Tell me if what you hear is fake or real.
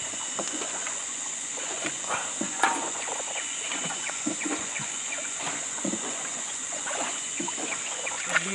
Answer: fake